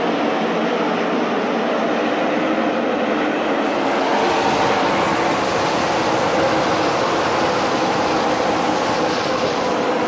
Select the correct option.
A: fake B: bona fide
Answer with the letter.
B